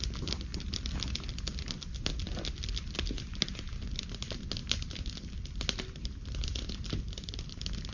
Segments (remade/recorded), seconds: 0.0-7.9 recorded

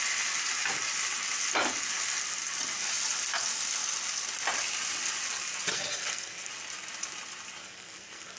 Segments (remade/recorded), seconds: 0.0-5.7 recorded; 5.7-6.5 remade; 6.5-7.6 recorded; 7.6-8.4 remade

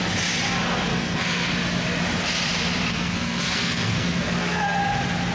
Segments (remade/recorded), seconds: 0.0-0.9 recorded; 0.9-1.5 remade; 1.5-2.9 recorded; 2.9-4.8 remade; 4.8-5.3 recorded

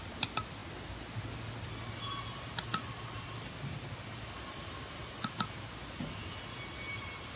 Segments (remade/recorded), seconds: 0.0-7.4 recorded

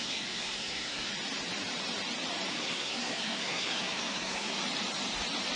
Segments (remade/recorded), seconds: 0.0-1.1 remade; 1.1-2.5 recorded; 2.5-4.6 remade; 4.6-5.6 recorded